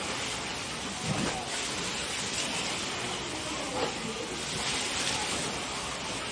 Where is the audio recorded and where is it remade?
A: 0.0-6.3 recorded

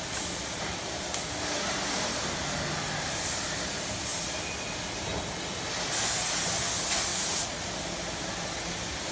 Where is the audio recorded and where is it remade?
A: 0.0-7.1 recorded; 7.1-7.7 remade; 7.7-9.1 recorded

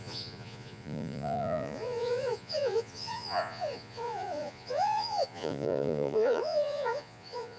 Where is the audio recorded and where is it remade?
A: 0.0-7.6 remade

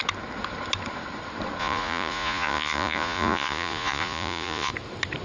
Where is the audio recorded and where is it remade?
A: 0.0-1.6 recorded; 1.6-4.7 remade; 4.7-5.2 recorded

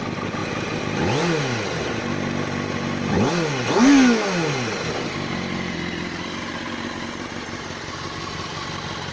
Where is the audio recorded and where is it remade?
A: 0.0-9.1 recorded

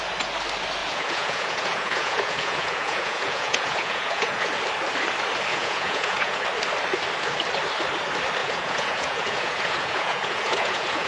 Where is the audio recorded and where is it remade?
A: 0.0-0.8 recorded; 0.8-4.5 remade; 4.5-5.5 recorded; 5.5-6.4 remade; 6.4-8.4 recorded; 8.4-11.1 remade